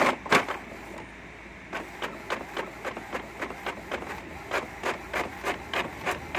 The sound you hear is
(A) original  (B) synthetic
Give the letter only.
A